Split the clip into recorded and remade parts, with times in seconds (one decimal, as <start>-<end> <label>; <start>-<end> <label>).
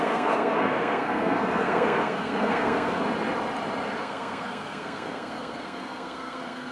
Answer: 0.0-3.0 remade; 3.0-4.0 recorded; 4.0-6.7 remade